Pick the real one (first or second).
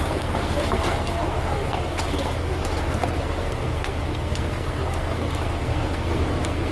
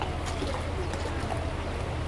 second